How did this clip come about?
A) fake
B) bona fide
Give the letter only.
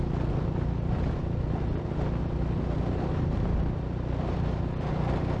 B